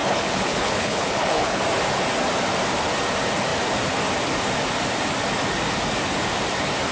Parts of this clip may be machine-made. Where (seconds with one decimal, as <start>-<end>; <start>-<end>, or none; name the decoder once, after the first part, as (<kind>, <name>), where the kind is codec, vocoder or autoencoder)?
0.0-1.6 (codec, HILCodec)